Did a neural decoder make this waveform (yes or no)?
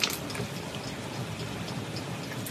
no